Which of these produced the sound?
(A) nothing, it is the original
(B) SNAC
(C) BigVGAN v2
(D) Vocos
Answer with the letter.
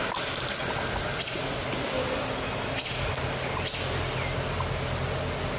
A